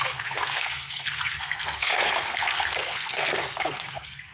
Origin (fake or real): fake